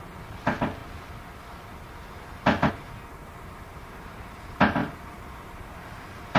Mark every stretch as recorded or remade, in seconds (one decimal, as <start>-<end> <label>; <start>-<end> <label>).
0.0-3.7 recorded; 3.7-4.3 remade; 4.3-4.8 recorded; 4.8-6.4 remade